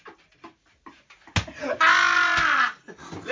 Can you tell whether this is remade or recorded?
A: recorded